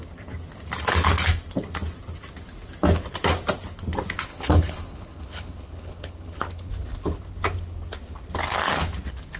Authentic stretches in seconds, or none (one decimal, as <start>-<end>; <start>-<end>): 0.0-4.3; 6.7-9.4